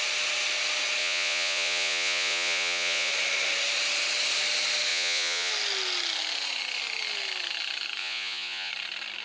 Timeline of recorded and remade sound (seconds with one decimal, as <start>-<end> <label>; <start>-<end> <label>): 0.0-1.0 recorded; 1.0-3.1 remade; 3.1-4.9 recorded; 4.9-5.5 remade; 5.5-8.0 recorded; 8.0-8.7 remade; 8.7-9.2 recorded